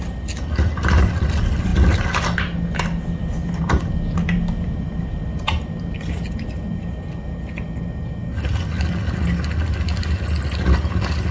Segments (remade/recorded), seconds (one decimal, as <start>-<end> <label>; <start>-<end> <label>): 0.0-11.3 recorded